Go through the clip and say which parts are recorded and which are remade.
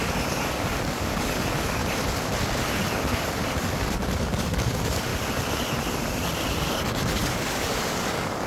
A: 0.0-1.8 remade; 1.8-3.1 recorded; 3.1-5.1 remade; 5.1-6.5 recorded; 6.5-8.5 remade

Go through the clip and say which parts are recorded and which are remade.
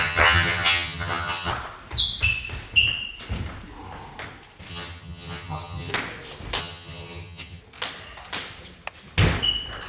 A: 0.0-1.5 remade; 1.5-4.7 recorded; 4.7-5.9 remade; 5.9-6.6 recorded; 6.6-7.6 remade; 7.6-9.9 recorded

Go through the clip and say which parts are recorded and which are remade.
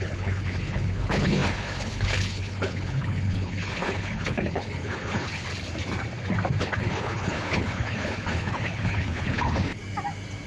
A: 0.0-5.5 remade; 5.5-6.6 recorded; 6.6-9.8 remade; 9.8-10.5 recorded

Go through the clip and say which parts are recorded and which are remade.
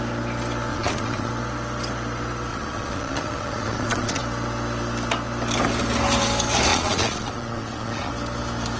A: 0.0-0.7 recorded; 0.7-1.3 remade; 1.3-2.5 recorded; 2.5-4.2 remade; 4.2-6.7 recorded; 6.7-8.1 remade; 8.1-8.8 recorded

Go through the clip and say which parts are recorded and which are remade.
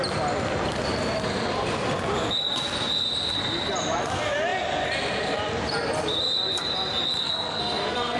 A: 0.0-7.2 recorded; 7.2-8.2 remade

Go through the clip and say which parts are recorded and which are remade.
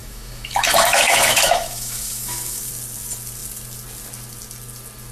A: 0.0-2.7 remade; 2.7-5.1 recorded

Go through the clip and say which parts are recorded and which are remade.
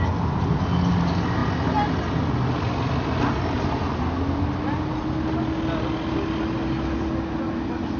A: 0.0-8.0 recorded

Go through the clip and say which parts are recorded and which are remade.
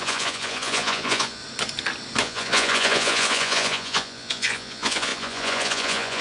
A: 0.0-1.4 remade; 1.4-2.2 recorded; 2.2-6.2 remade